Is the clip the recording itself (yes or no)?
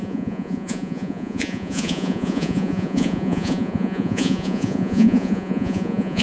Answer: no